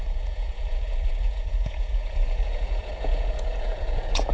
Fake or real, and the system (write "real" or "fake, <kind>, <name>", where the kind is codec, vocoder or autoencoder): fake, vocoder, Vocos